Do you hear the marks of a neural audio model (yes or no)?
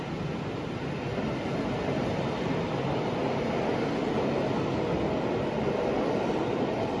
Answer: no